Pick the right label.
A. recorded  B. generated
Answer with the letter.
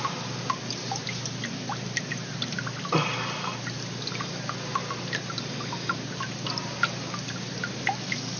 A